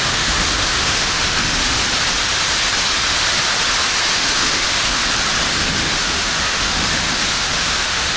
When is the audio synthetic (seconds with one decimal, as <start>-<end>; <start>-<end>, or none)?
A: 0.0-1.8; 4.1-5.0; 5.6-8.2